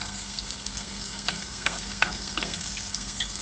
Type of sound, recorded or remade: remade